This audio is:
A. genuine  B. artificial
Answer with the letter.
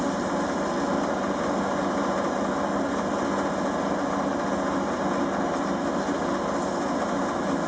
A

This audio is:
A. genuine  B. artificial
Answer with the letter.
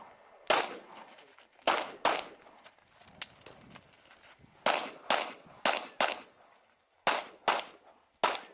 A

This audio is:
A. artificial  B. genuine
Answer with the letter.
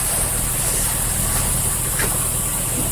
A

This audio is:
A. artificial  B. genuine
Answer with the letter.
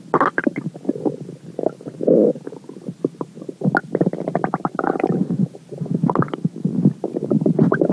B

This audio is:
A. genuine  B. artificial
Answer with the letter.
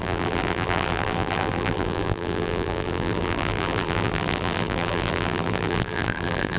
B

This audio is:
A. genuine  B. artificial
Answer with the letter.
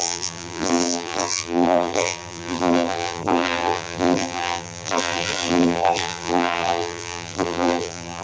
B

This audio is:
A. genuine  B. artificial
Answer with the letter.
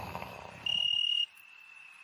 B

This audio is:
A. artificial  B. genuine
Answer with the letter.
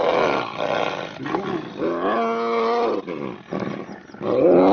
B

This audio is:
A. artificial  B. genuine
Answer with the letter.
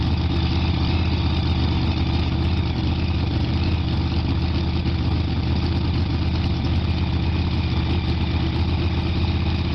B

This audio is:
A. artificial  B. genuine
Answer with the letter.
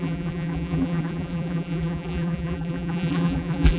A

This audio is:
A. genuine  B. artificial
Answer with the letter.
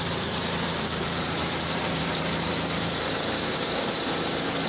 B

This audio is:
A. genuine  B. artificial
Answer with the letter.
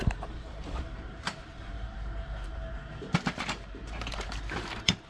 B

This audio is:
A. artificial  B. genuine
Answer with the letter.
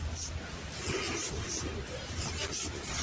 B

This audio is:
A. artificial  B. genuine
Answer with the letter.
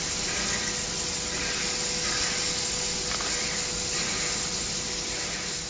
B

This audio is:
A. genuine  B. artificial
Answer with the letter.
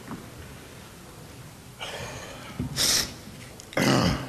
A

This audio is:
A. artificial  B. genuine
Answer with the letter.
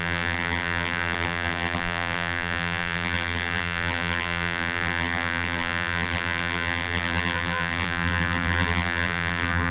A